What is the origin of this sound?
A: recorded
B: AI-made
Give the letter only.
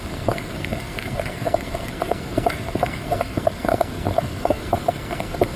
B